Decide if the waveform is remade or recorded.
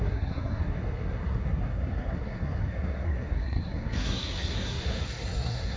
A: remade